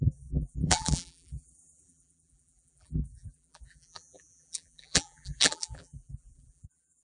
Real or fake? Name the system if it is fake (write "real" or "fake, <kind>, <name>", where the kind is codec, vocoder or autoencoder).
fake, vocoder, BigVGAN v2